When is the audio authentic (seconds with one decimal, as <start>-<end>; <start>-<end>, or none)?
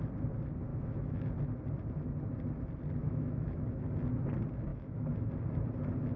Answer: 0.0-0.7; 1.3-3.0; 3.8-4.7; 5.3-6.2